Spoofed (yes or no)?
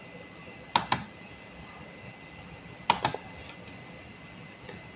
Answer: no